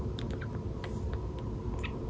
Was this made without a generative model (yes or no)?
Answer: yes